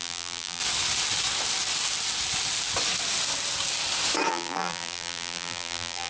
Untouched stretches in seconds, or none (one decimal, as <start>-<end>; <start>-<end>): 0.6-4.3